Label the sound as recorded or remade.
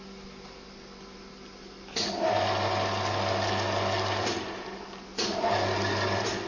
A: recorded